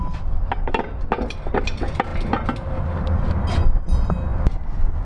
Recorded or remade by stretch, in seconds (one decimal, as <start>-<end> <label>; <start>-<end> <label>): 0.0-5.0 recorded